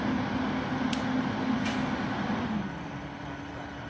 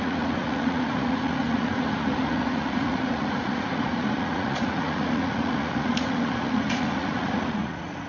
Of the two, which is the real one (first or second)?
first